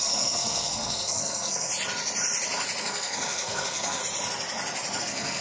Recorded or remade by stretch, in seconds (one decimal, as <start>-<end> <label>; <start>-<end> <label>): 0.0-1.7 remade; 1.7-2.8 recorded; 2.8-4.0 remade; 4.0-5.0 recorded; 5.0-5.4 remade

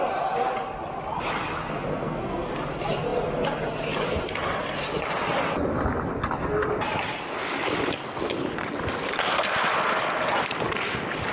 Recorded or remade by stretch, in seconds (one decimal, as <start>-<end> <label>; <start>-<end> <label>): 0.0-1.9 recorded; 1.9-2.5 remade; 2.5-11.3 recorded